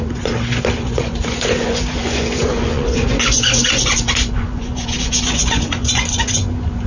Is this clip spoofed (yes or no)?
yes